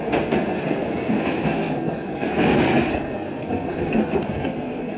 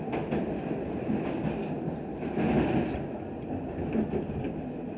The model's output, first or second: first